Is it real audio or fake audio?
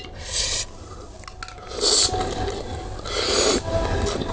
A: real